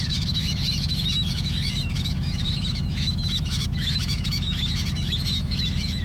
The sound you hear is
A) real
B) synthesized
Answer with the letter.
B